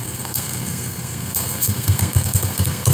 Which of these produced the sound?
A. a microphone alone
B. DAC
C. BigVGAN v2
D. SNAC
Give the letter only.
D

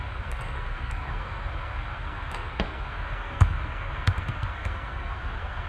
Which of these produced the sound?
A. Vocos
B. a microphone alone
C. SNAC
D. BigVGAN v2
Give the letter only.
C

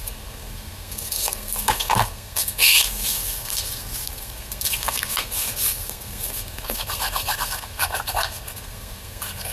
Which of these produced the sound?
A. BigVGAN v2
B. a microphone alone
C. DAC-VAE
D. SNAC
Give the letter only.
D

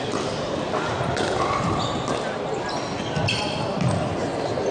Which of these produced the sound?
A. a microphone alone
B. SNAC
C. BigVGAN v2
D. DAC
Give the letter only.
A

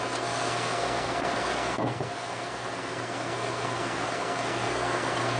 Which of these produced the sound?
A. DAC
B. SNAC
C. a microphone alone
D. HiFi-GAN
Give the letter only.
B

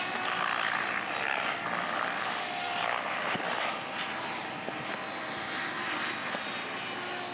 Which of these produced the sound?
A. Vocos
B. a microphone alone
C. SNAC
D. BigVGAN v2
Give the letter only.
B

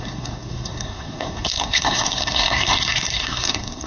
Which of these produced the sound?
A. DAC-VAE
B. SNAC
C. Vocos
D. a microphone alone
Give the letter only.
B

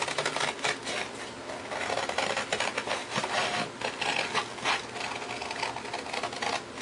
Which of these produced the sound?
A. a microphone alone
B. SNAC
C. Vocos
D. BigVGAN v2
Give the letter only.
A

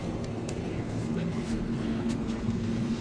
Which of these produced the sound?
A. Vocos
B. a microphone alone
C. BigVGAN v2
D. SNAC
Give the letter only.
D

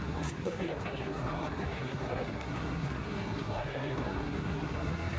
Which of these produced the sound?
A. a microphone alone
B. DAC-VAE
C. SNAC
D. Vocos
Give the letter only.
C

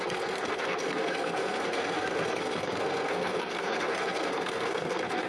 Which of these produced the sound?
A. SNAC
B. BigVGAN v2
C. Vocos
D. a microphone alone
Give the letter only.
A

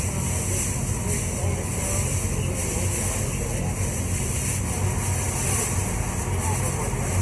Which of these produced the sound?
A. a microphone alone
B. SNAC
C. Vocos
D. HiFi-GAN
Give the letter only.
A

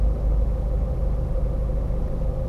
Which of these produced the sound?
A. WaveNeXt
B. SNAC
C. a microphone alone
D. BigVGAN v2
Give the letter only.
C